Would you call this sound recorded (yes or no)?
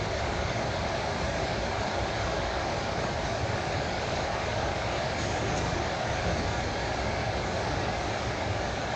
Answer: no